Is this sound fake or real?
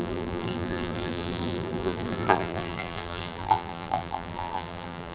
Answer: fake